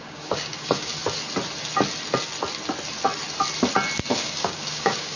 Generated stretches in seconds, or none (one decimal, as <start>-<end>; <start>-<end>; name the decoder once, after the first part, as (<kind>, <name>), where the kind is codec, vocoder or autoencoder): 0.0-1.0 (codec, DAC); 4.1-5.2

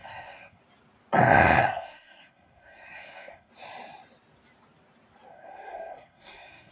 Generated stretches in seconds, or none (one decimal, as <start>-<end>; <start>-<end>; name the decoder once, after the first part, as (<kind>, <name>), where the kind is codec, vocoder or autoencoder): 0.0-0.6 (codec, SNAC); 1.6-3.5; 5.3-6.7

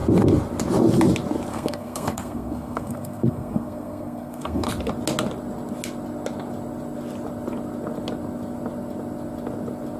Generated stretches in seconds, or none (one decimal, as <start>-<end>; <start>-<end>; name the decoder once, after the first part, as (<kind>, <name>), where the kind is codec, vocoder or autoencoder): 1.5-4.7 (codec, SNAC)

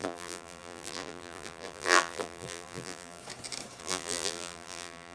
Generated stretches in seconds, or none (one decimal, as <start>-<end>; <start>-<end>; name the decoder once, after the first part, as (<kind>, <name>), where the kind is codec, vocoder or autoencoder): 0.0-3.2 (vocoder, BigVGAN v2); 3.8-5.1

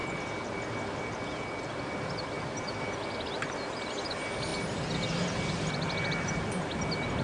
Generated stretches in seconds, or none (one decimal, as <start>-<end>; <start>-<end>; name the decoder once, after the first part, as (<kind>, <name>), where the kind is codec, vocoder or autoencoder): none

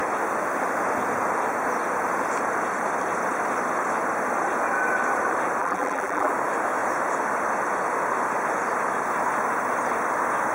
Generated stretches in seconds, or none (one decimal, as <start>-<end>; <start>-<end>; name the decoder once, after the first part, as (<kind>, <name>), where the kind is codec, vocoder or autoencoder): 5.6-6.3 (vocoder, BigVGAN v2)